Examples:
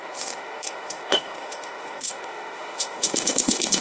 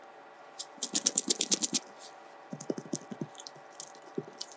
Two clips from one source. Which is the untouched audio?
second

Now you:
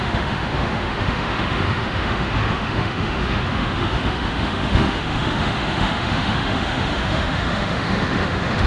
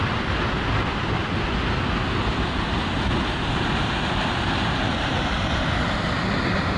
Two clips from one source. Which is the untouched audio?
second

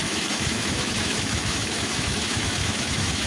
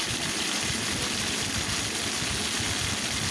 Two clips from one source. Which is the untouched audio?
second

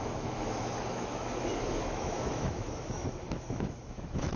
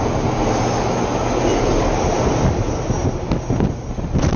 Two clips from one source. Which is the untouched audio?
second